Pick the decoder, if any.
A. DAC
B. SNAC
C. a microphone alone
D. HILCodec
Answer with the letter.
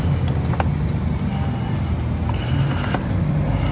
C